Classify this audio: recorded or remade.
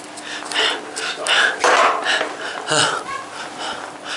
recorded